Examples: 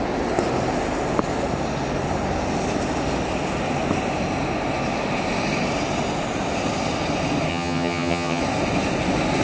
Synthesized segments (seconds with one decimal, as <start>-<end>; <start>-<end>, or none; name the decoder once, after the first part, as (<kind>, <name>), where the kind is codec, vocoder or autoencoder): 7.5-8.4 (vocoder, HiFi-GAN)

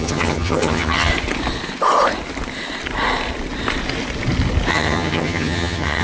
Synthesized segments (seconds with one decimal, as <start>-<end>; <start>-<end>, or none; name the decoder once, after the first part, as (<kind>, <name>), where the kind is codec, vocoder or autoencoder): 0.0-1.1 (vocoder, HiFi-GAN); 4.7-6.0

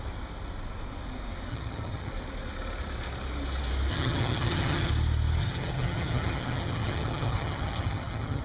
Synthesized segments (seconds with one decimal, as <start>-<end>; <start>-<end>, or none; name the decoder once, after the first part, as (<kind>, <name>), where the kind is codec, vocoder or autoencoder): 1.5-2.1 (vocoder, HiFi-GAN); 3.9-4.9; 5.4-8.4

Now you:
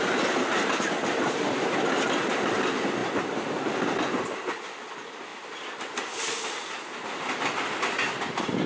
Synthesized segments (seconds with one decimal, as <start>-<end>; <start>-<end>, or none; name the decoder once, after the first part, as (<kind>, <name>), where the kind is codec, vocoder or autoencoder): none